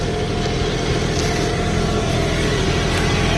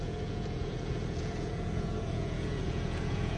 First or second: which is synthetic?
second